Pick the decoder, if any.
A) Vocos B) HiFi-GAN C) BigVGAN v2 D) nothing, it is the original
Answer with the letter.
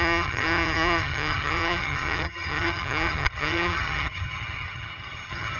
B